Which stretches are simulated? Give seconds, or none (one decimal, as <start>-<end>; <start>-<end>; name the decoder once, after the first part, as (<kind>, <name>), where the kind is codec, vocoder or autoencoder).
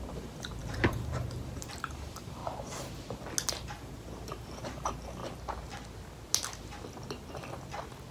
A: 0.0-2.4 (vocoder, BigVGAN v2); 3.5-5.2